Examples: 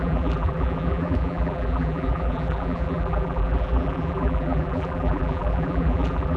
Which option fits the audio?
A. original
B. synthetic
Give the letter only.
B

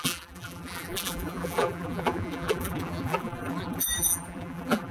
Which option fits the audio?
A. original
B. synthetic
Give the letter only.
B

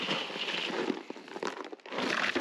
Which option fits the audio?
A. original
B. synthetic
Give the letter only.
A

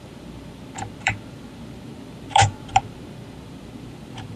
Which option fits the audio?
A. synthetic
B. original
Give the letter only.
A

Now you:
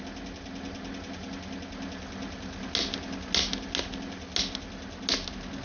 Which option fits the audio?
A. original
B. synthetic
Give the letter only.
A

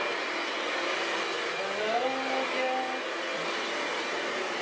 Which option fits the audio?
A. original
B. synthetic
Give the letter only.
A